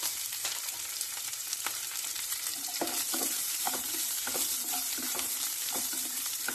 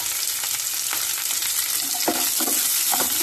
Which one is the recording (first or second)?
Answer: second